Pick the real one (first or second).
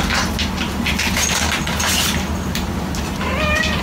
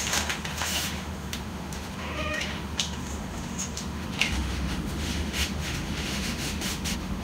first